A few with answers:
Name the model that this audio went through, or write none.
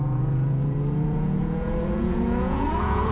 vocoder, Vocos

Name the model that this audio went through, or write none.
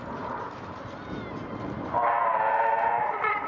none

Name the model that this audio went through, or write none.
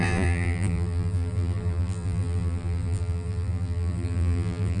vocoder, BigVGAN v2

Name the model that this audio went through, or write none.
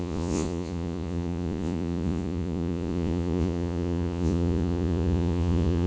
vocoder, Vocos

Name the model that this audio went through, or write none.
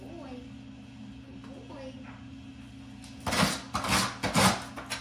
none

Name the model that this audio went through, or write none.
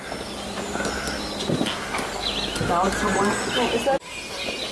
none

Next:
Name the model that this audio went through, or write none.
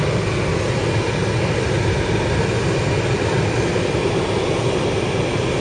none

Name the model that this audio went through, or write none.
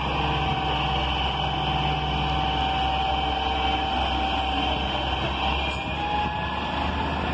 none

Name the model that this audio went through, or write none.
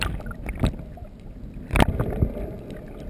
none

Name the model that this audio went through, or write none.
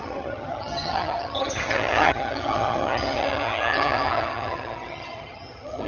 vocoder, HiFi-GAN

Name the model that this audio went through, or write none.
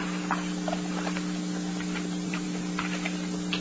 none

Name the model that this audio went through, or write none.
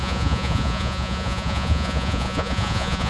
vocoder, Vocos